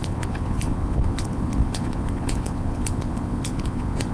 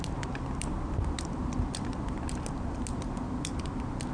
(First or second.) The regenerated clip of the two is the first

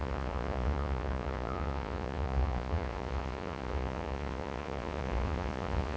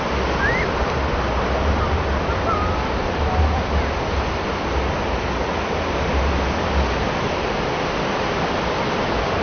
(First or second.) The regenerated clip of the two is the first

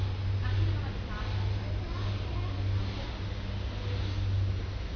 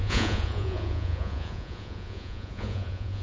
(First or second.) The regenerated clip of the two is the second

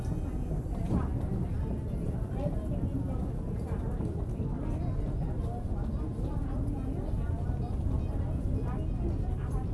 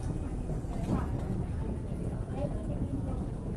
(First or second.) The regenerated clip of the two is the second